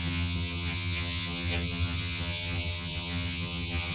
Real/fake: fake